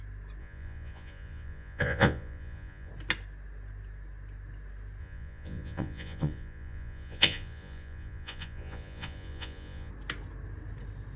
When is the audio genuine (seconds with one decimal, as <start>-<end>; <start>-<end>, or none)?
0.0-0.4; 2.9-5.0; 9.9-11.2

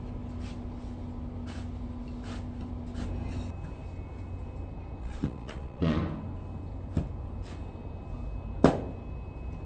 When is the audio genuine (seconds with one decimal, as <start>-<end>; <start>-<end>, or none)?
0.0-5.0; 6.0-9.7